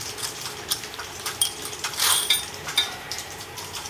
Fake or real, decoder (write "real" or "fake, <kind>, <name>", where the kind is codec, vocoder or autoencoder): fake, vocoder, BigVGAN v2